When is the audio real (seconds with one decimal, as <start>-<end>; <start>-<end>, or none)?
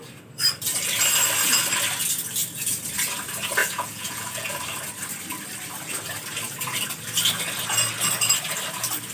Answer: 0.0-3.6; 4.5-9.1